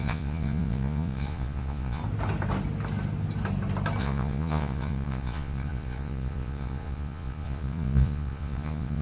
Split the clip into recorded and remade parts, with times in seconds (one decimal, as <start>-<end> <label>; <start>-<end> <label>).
0.0-2.0 remade; 2.0-4.0 recorded; 4.0-9.0 remade